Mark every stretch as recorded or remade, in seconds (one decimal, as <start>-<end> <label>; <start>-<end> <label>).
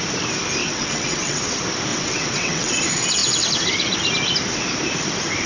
0.0-0.6 recorded; 0.6-1.4 remade; 1.4-1.9 recorded; 1.9-2.7 remade; 2.7-5.5 recorded